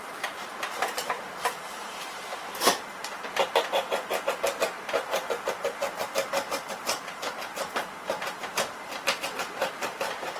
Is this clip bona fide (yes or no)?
no